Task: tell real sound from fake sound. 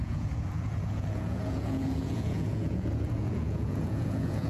fake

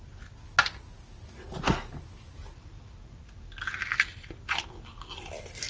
real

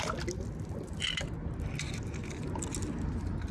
real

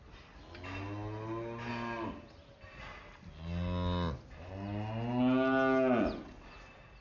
real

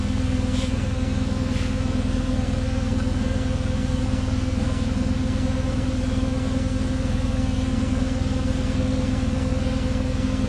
fake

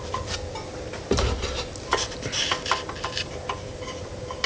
real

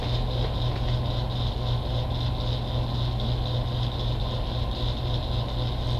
real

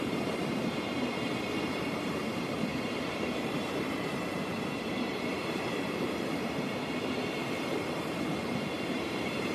fake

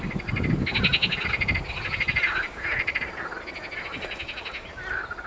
real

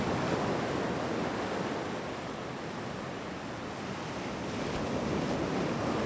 real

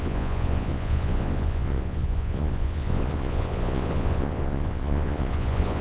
fake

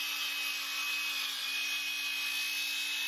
real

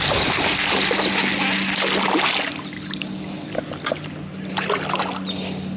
real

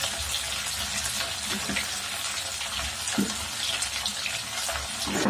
real